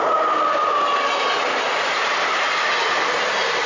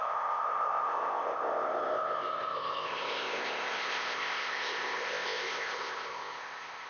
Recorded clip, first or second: first